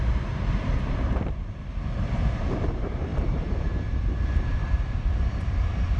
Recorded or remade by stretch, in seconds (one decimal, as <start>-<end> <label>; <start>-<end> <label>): 0.0-6.0 remade